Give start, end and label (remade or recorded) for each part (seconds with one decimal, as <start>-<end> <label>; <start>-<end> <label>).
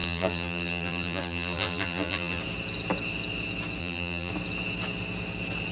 0.0-2.4 remade; 2.4-3.8 recorded; 3.8-4.3 remade; 4.3-5.7 recorded